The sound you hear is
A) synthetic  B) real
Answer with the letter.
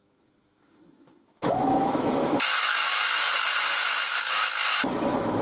A